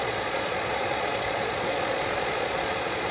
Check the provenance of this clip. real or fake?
fake